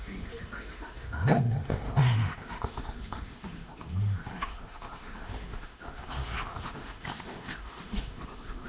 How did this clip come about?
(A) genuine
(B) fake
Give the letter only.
B